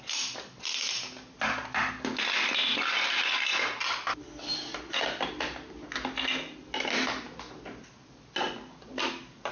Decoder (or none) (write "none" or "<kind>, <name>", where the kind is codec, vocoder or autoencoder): none